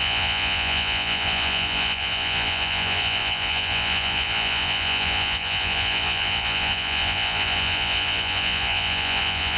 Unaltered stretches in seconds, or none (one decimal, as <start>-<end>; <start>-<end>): none

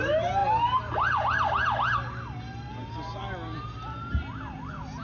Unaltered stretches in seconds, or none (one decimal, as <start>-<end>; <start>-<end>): 0.0-5.0

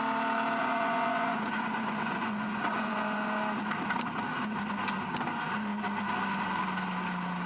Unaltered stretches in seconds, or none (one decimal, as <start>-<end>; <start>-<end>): 0.0-0.6; 3.4-7.5

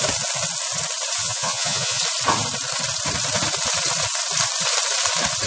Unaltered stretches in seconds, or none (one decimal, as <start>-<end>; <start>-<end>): 0.0-1.2; 2.0-5.5

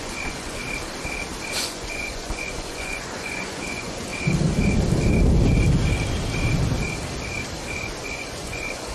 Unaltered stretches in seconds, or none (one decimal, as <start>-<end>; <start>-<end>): 0.6-1.6; 4.1-8.0

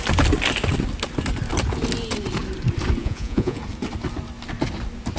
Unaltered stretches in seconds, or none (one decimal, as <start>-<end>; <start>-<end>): 0.0-3.0; 3.6-5.2